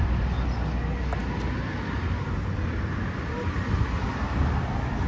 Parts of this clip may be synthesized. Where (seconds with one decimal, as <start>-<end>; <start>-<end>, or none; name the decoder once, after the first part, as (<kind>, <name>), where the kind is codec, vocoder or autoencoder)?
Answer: none